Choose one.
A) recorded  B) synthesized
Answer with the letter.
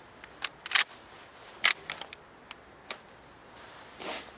A